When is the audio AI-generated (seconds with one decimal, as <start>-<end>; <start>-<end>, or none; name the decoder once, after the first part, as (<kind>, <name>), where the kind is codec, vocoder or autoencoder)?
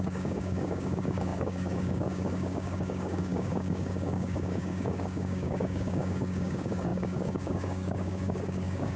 0.0-9.0 (codec, DAC)